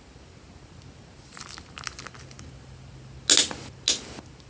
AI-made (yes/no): no